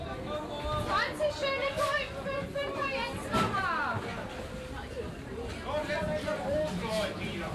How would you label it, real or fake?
real